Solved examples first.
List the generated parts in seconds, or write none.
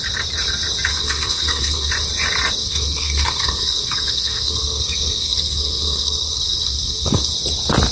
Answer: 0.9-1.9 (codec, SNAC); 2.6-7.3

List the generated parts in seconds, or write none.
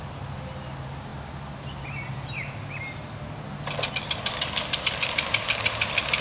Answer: none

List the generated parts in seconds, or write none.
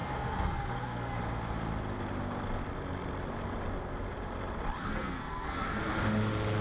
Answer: 0.0-1.2 (codec, SNAC); 4.8-5.9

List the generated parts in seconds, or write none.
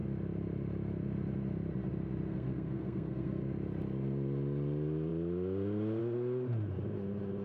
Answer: 2.3-3.4 (codec, SNAC)